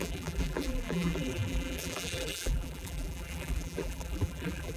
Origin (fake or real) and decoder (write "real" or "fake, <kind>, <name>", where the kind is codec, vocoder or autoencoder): fake, vocoder, BigVGAN v2